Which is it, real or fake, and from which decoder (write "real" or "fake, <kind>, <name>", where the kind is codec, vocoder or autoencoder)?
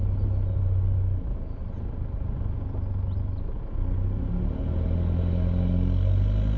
real